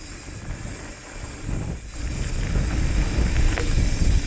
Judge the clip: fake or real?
real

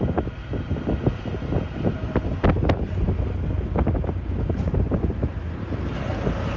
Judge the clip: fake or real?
real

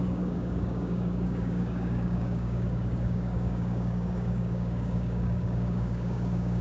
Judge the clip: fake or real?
fake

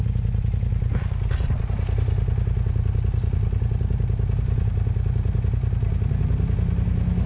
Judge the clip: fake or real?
real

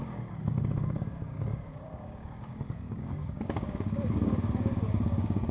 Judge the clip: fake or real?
fake